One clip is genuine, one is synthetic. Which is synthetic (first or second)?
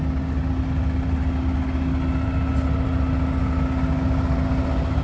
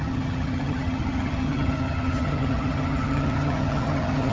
second